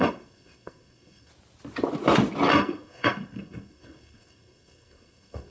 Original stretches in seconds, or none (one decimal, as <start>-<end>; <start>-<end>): 1.3-2.5